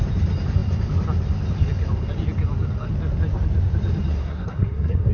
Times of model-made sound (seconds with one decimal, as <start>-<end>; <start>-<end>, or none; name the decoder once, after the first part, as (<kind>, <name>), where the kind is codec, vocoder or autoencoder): 4.1-5.1 (codec, SNAC)